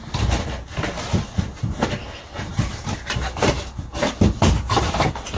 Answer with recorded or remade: recorded